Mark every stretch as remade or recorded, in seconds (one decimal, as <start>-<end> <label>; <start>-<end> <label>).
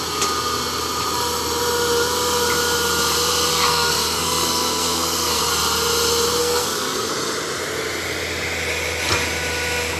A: 0.0-3.5 recorded; 3.5-5.4 remade; 5.4-6.4 recorded; 6.4-7.1 remade; 7.1-10.0 recorded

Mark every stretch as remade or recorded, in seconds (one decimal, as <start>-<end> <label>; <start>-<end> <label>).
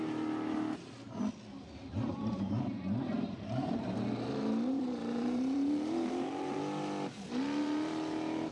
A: 0.0-2.1 recorded; 2.1-6.6 remade; 6.6-8.5 recorded